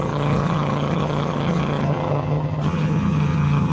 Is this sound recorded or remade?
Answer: remade